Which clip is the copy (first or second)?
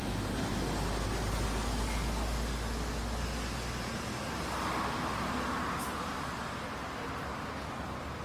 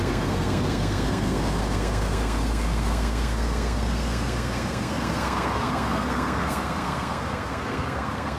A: second